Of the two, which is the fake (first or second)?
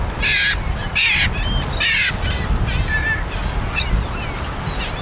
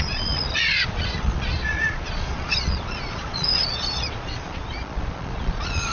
second